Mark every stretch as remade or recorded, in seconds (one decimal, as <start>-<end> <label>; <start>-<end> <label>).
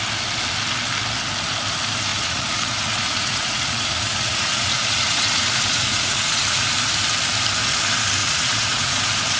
0.0-2.1 recorded; 2.1-6.7 remade; 6.7-8.2 recorded; 8.2-9.0 remade; 9.0-9.4 recorded